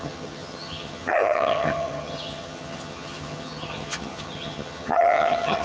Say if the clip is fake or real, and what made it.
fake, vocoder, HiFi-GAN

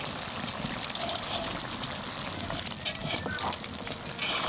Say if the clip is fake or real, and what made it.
real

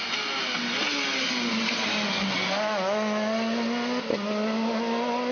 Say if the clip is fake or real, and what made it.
real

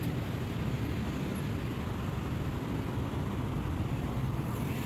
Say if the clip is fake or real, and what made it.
real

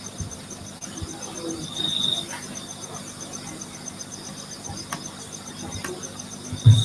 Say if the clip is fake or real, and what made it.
real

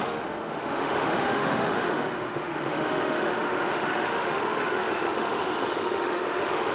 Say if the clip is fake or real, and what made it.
fake, autoencoder, DAC-VAE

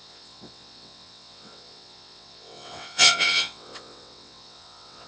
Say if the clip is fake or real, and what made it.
fake, vocoder, WaveNeXt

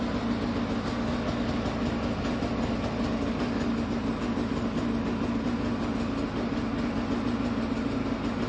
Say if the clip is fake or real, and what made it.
real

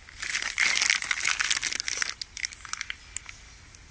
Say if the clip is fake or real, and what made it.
real